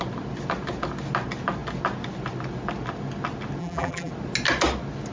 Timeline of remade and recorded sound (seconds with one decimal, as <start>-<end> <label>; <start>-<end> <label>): 0.0-3.6 recorded; 3.6-4.1 remade; 4.1-5.1 recorded